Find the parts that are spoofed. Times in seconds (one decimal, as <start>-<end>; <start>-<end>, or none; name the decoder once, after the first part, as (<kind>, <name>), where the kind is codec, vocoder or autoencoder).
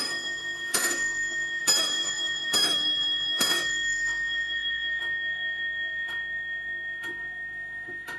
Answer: 0.0-8.2 (autoencoder, DAC-VAE)